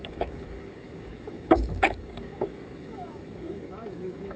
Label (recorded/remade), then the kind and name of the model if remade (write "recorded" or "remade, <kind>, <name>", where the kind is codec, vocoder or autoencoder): remade, codec, DAC